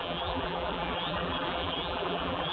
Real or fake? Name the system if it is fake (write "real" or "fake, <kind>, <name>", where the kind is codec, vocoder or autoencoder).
fake, vocoder, BigVGAN v2